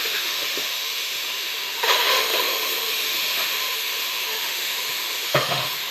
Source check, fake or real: fake